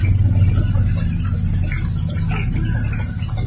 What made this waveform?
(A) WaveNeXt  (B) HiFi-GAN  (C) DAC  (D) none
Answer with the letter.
D